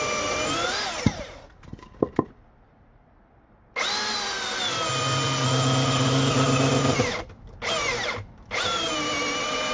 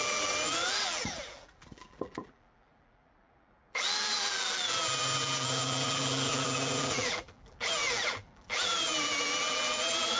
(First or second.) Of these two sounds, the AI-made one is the second